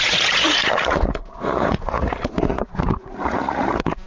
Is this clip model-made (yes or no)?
yes